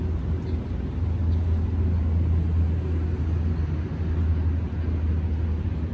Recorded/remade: recorded